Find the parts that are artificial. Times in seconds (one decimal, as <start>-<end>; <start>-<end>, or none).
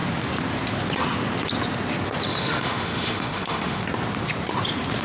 2.3-3.8